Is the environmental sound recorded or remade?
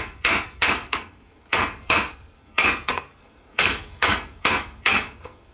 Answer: remade